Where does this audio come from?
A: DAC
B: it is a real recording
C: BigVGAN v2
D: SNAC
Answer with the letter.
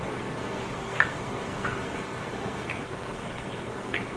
D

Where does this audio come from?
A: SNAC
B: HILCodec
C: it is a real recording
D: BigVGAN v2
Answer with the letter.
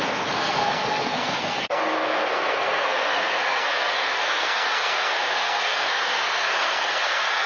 A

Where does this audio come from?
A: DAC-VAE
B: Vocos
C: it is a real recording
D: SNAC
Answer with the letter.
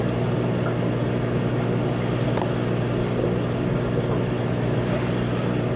C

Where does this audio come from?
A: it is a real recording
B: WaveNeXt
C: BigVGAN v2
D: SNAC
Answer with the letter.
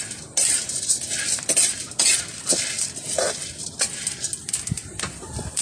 A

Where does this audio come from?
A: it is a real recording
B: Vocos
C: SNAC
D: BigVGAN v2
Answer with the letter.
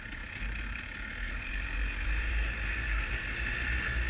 A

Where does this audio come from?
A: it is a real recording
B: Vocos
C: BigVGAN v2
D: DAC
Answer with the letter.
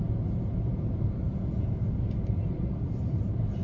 C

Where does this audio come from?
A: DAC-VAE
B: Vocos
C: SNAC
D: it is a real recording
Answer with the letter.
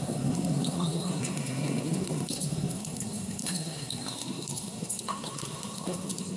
C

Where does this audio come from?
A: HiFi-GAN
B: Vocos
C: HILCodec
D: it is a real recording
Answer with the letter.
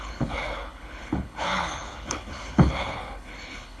C